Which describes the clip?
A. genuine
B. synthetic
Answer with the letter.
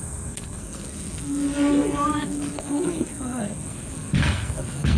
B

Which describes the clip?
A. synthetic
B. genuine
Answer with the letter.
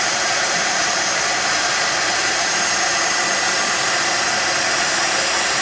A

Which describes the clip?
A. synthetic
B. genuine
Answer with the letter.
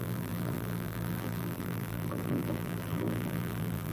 A